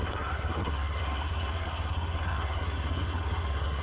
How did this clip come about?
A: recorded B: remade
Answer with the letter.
B